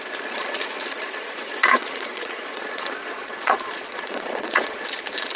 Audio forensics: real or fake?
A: fake